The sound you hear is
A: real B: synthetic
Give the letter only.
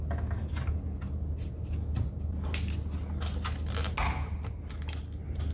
A